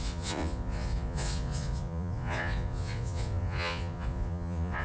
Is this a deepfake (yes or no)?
yes